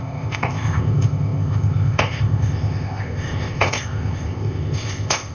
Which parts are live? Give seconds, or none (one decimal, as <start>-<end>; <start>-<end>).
none